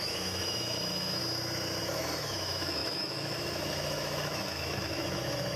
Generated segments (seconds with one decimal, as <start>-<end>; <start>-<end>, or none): 0.0-1.2; 1.8-5.6